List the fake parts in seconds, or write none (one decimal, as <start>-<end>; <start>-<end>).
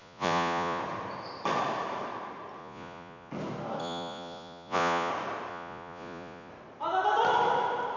0.0-0.8; 2.6-3.3; 3.8-5.1; 5.5-6.5